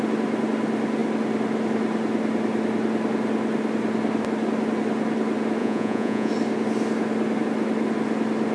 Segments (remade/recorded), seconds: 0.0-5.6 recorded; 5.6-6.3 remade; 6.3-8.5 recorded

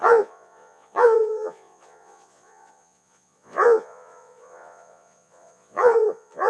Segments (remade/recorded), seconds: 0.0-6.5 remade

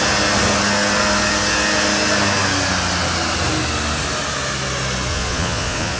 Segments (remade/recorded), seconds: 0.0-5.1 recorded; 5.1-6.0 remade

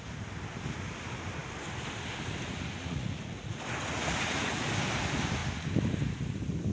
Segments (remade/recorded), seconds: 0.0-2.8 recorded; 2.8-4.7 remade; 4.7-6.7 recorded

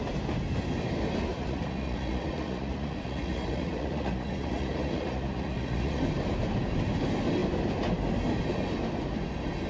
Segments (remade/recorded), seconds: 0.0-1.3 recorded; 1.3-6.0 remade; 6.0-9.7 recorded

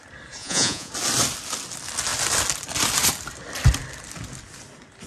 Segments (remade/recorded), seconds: 0.0-0.4 recorded; 0.4-0.9 remade; 0.9-5.1 recorded

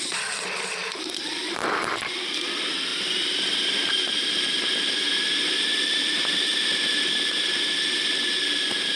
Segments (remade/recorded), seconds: 0.0-9.0 recorded